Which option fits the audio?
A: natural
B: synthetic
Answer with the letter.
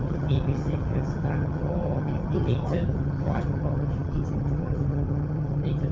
B